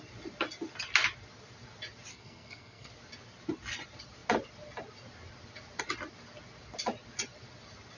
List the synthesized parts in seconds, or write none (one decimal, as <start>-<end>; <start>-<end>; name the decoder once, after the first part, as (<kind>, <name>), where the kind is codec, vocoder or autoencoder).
2.1-2.9 (codec, SNAC)